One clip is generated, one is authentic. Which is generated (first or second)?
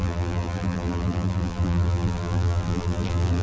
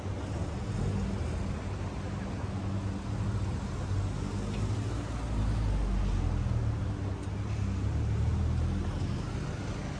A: first